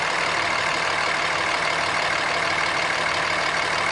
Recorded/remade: recorded